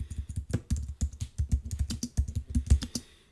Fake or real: real